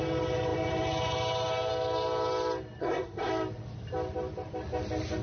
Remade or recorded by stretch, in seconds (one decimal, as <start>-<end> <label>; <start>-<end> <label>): 0.0-2.8 recorded; 2.8-3.3 remade; 3.3-5.2 recorded